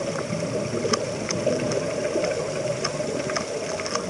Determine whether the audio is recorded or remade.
recorded